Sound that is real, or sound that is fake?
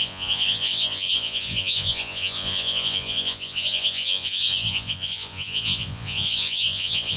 fake